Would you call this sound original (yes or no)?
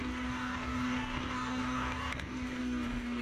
no